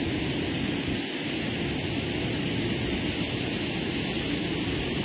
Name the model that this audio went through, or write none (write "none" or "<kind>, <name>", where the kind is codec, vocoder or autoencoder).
none